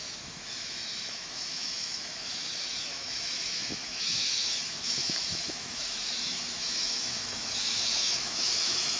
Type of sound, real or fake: fake